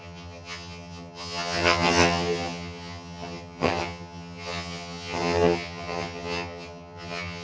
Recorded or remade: remade